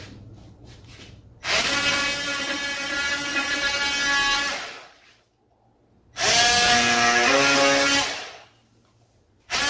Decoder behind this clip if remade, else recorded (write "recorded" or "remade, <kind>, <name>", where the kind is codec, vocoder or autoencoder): recorded